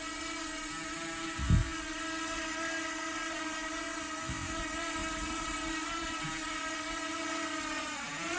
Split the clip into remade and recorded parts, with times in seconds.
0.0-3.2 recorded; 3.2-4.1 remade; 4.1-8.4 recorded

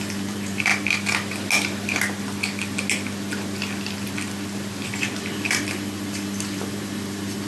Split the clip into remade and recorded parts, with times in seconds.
0.0-0.7 remade; 0.7-5.2 recorded; 5.2-7.5 remade

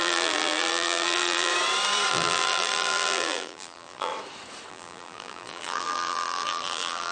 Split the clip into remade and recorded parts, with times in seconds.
0.0-1.5 remade; 1.5-2.1 recorded; 2.1-4.1 remade; 4.1-4.7 recorded; 4.7-7.1 remade

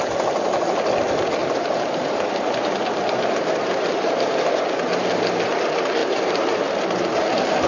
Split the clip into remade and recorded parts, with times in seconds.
0.0-1.4 recorded; 1.4-4.6 remade; 4.6-6.0 recorded; 6.0-6.6 remade; 6.6-7.7 recorded